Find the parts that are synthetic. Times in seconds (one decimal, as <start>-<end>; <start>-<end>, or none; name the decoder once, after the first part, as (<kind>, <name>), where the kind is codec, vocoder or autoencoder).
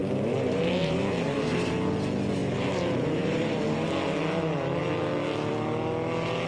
0.0-1.7 (vocoder, BigVGAN v2); 2.4-3.6